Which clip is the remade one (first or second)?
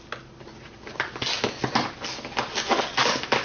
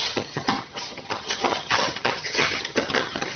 second